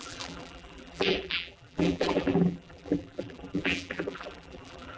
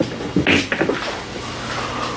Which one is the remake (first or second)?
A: first